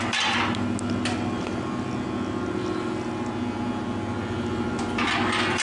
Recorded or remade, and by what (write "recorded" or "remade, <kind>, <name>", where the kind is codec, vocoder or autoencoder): recorded